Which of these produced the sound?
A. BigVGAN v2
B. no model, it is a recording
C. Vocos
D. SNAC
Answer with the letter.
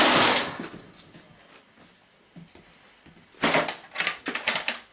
B